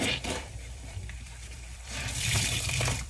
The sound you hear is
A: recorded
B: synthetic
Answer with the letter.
B